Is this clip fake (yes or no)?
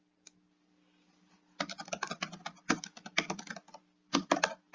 no